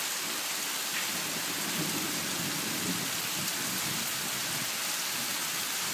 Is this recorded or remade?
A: recorded